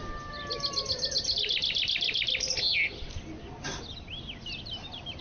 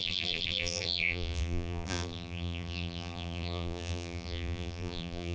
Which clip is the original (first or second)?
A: first